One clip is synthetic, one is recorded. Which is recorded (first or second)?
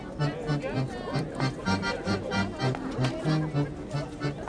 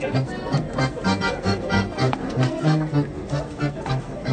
first